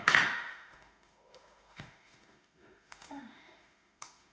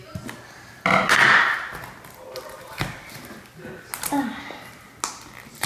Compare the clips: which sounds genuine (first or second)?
second